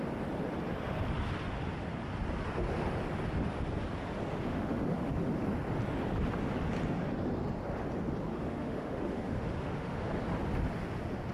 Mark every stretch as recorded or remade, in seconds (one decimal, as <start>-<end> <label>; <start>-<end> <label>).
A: 0.0-4.5 recorded; 4.5-5.1 remade; 5.1-8.3 recorded; 8.3-10.1 remade; 10.1-11.3 recorded